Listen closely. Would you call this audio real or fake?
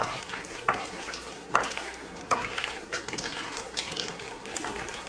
fake